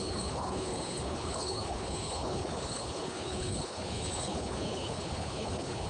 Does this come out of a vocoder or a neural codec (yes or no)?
yes